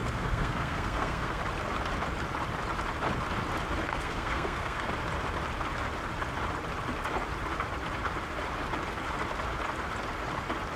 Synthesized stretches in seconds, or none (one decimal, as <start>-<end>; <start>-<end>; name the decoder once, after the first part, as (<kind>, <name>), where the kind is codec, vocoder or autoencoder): 0.0-1.4 (codec, SNAC); 3.9-4.9